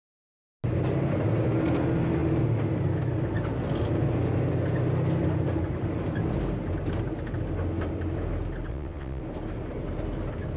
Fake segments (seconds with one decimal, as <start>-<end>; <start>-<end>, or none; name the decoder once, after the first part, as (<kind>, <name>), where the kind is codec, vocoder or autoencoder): 8.7-9.2 (vocoder, WaveNeXt)